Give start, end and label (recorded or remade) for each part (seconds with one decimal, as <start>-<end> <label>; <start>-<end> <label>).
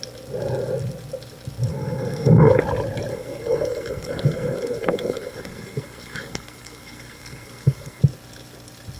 0.0-1.7 recorded; 1.7-2.6 remade; 2.6-3.1 recorded; 3.1-8.0 remade; 8.0-9.0 recorded